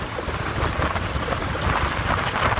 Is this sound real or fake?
real